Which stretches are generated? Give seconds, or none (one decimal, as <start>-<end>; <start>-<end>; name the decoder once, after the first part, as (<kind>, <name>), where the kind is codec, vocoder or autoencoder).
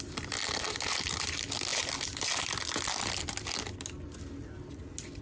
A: none